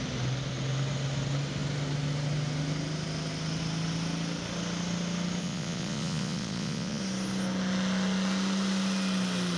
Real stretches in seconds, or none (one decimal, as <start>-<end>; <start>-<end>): 0.0-5.4; 7.0-9.6